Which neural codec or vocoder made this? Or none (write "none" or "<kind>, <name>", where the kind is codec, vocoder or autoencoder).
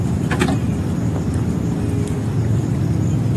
none